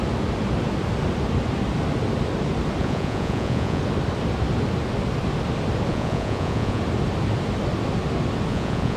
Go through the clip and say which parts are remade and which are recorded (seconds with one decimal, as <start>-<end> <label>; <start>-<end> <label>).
0.0-2.8 recorded; 2.8-3.8 remade; 3.8-5.9 recorded; 5.9-6.8 remade; 6.8-8.5 recorded; 8.5-9.0 remade